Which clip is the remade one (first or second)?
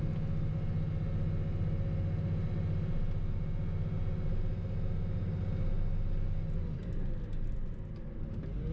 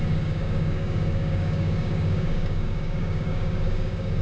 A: second